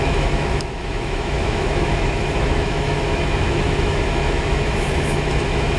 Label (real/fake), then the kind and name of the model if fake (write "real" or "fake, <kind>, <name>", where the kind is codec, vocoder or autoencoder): fake, autoencoder, DAC-VAE